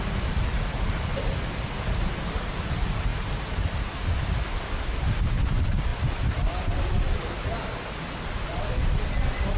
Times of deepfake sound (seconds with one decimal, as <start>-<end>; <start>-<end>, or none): none